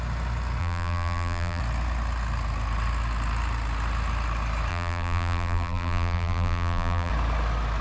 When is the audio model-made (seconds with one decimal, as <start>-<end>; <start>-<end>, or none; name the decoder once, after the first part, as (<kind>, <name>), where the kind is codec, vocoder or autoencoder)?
0.6-1.6 (vocoder, BigVGAN v2); 4.7-7.1